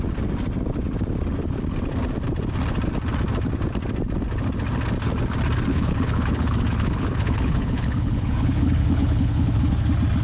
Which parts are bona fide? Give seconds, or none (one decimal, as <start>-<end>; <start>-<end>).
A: 0.0-5.7; 9.6-10.2